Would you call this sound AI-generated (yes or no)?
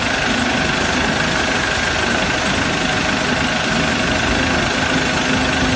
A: no